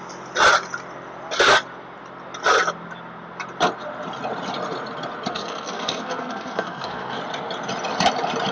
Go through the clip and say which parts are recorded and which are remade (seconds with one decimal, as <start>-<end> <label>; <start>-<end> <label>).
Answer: 0.0-5.3 recorded; 5.3-7.2 remade; 7.2-8.5 recorded